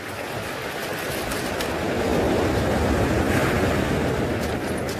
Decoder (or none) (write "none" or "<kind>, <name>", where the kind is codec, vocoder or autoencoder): none